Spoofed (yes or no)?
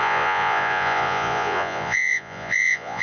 yes